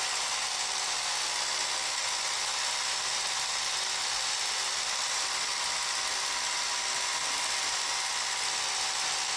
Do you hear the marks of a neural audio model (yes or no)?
no